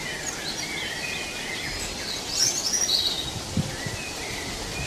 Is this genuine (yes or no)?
yes